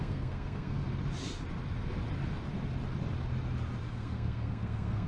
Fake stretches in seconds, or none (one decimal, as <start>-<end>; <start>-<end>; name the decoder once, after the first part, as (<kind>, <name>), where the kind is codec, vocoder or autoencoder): 0.0-0.8 (codec, SNAC); 3.9-5.1